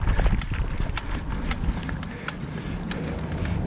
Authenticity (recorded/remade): recorded